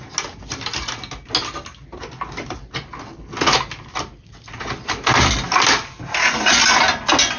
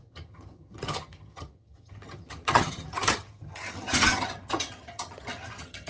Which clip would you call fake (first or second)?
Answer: second